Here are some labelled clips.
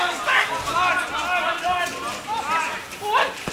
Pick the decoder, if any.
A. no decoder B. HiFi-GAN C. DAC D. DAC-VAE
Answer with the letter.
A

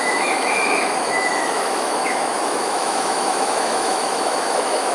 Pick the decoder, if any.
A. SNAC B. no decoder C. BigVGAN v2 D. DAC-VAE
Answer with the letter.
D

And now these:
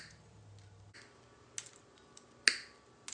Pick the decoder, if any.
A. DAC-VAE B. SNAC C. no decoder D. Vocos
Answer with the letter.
C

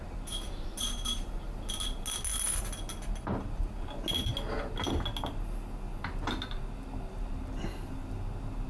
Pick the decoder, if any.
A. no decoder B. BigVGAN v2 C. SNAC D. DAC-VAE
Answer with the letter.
A